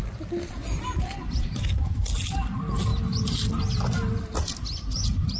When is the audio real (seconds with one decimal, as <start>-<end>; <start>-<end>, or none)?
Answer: 0.0-5.4